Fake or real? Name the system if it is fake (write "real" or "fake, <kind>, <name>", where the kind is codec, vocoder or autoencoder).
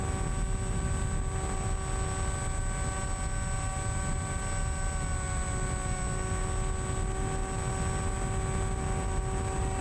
real